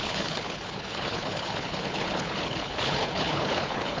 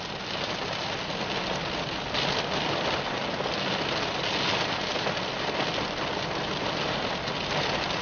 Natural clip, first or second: second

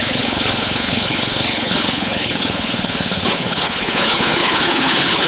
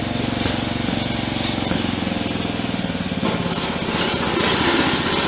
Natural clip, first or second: second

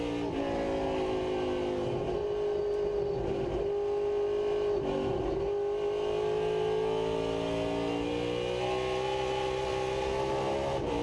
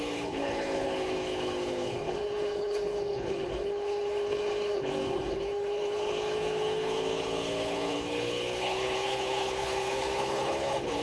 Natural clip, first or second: first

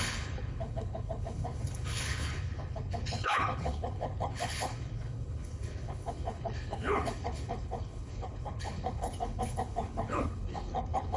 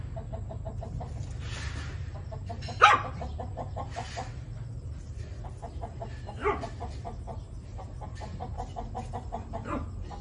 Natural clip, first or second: second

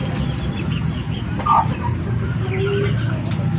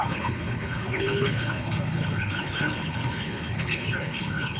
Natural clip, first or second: first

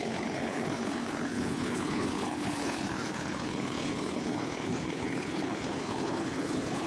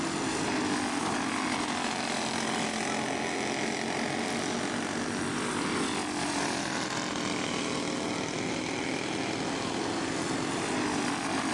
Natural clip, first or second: second